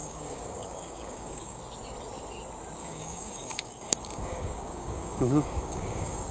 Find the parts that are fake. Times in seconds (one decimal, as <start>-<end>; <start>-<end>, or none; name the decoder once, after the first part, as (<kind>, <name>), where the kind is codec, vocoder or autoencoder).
0.0-1.6 (codec, DAC); 2.8-6.3